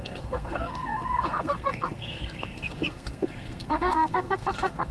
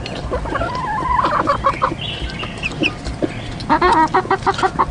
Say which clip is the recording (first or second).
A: second